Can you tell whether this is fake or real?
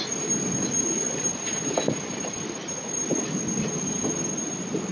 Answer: real